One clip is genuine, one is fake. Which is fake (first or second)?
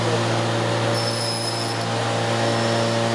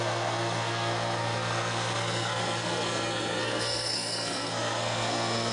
second